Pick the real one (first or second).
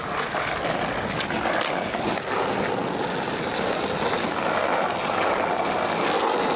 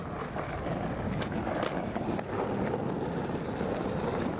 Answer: first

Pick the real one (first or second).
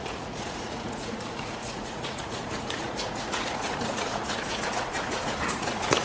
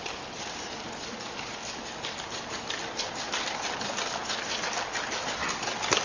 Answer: second